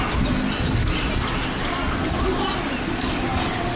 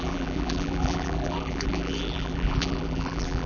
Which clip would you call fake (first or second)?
second